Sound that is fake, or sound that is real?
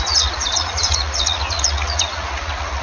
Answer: fake